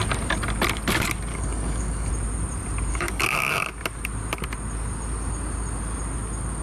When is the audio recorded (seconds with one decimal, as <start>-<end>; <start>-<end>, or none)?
0.0-1.3; 2.1-2.9; 3.7-6.6